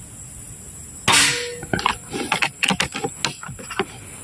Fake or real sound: real